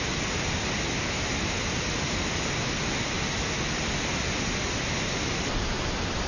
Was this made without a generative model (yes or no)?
yes